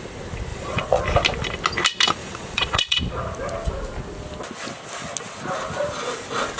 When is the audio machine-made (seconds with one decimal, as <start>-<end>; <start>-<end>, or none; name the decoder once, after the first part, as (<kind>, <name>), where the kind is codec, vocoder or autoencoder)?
0.5-1.0 (vocoder, Vocos); 2.2-3.0